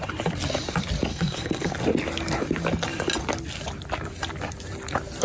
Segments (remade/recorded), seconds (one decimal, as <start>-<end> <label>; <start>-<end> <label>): 0.0-1.1 recorded; 1.1-1.7 remade; 1.7-5.2 recorded